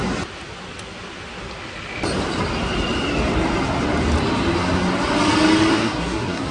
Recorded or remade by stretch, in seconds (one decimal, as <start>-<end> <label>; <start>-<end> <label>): 0.0-5.7 recorded; 5.7-6.5 remade